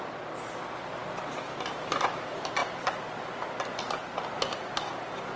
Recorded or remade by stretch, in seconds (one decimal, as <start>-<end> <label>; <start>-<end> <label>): 0.0-5.4 recorded